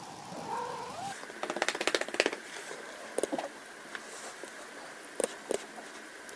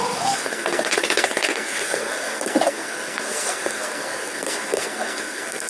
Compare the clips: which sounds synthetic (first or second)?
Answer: second